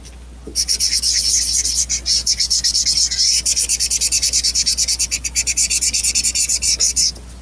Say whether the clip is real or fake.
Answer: real